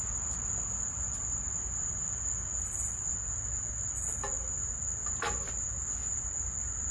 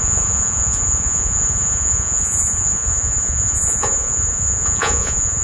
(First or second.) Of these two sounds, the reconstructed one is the second